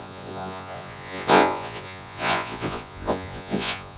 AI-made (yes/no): yes